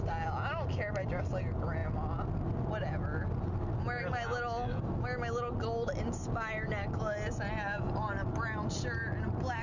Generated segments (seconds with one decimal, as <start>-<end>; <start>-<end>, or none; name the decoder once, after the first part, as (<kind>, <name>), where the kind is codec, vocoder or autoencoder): none